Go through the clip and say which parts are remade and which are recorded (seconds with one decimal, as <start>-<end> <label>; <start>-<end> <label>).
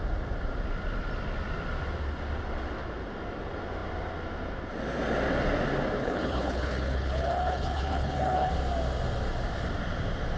0.0-6.0 recorded; 6.0-8.5 remade; 8.5-10.4 recorded